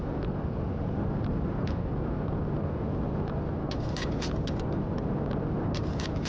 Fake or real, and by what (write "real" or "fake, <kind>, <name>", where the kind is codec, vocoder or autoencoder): real